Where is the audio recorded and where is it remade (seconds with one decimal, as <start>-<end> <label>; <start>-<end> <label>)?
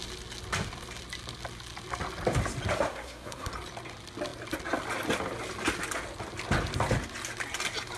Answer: 0.0-2.9 recorded; 2.9-3.5 remade; 3.5-8.0 recorded